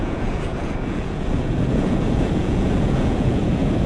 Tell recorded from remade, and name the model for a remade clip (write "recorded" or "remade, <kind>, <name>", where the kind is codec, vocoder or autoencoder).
remade, vocoder, Vocos